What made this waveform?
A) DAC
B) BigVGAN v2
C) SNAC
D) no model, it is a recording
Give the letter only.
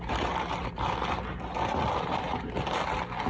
D